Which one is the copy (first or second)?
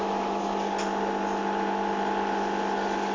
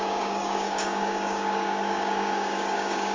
second